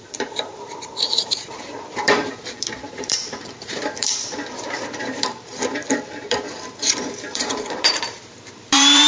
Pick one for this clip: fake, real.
fake